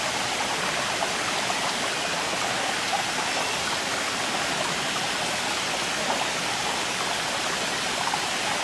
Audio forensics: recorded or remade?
recorded